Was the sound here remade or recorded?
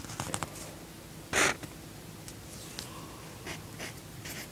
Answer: recorded